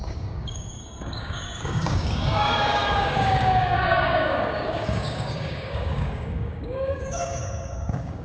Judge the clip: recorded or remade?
remade